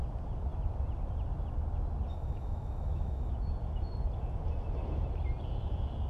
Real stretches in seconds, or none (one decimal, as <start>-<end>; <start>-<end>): 0.0-2.1; 3.3-6.1